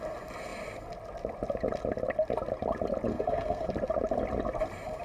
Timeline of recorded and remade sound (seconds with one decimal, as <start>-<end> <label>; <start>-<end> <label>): 0.0-3.1 recorded; 3.1-3.7 remade; 3.7-5.0 recorded

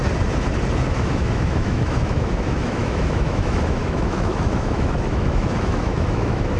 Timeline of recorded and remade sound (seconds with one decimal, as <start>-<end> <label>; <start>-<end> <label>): 0.0-0.9 recorded; 0.9-6.6 remade

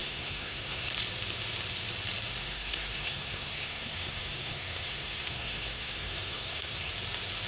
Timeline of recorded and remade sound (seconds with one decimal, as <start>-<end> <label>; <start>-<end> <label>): 0.0-0.9 remade; 0.9-2.4 recorded; 2.4-6.9 remade; 6.9-7.5 recorded

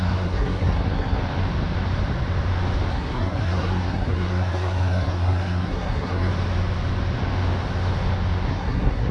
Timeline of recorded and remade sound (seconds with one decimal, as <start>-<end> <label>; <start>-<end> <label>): 0.0-1.2 remade; 1.2-2.9 recorded; 2.9-6.3 remade; 6.3-8.5 recorded; 8.5-9.1 remade

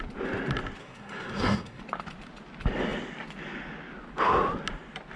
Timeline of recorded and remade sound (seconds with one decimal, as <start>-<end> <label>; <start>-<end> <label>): 0.0-0.8 recorded; 0.8-1.8 remade; 1.8-5.2 recorded